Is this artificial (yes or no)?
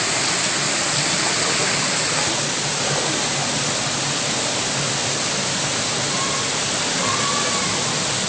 no